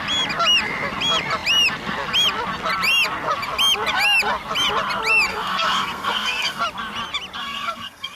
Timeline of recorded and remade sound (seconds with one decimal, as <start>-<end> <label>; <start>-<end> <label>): 0.0-5.3 recorded; 5.3-6.6 remade; 6.6-7.4 recorded; 7.4-8.2 remade